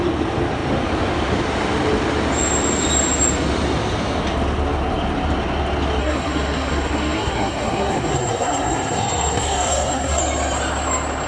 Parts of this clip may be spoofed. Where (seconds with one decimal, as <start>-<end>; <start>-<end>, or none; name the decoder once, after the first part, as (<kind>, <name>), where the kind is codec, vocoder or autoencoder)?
6.0-10.2 (codec, SNAC)